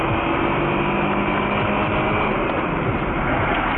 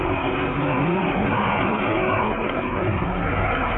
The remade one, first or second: second